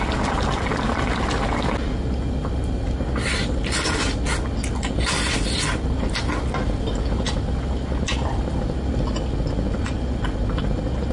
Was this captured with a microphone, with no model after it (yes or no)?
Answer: yes